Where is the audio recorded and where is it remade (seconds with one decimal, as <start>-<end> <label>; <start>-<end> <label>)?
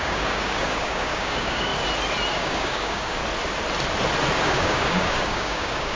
0.0-1.7 remade; 1.7-2.3 recorded; 2.3-3.2 remade; 3.2-4.4 recorded; 4.4-6.0 remade